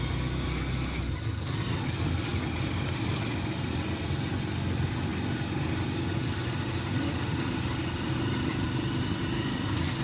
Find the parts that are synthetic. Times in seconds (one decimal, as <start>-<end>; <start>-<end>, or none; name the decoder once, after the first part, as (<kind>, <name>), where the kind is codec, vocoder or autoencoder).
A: none